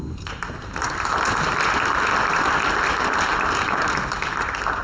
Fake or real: real